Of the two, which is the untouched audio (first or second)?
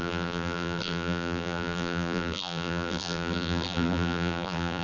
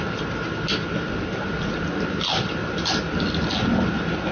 second